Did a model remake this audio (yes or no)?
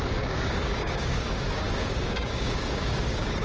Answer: yes